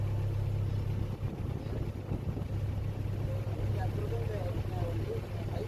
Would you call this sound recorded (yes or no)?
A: yes